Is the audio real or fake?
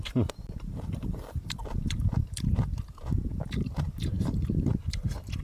fake